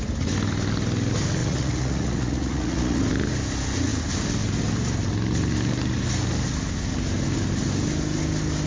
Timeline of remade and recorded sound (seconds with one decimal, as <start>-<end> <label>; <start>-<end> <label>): 0.0-1.4 recorded; 1.4-3.0 remade; 3.0-8.7 recorded